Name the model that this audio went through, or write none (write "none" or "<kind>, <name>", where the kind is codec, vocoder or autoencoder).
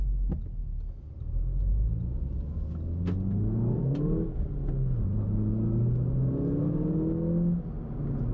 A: none